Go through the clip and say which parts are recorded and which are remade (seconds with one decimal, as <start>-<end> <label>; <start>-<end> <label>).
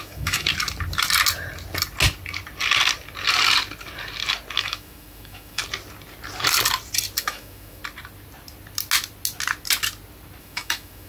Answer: 0.0-0.5 remade; 0.5-4.6 recorded; 4.6-5.6 remade; 5.6-7.2 recorded; 7.2-7.8 remade; 7.8-10.4 recorded; 10.4-11.1 remade